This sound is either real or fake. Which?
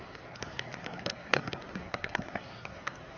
fake